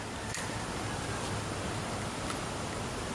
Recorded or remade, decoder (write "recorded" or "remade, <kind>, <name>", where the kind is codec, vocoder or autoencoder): recorded